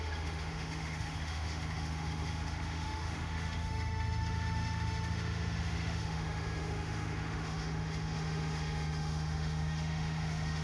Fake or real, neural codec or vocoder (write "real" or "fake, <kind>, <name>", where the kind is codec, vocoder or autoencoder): fake, autoencoder, DAC-VAE